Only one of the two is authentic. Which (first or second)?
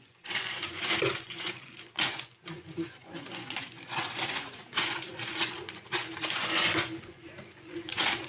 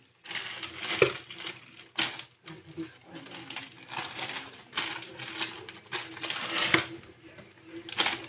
second